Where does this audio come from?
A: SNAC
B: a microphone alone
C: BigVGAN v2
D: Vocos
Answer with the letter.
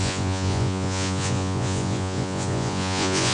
D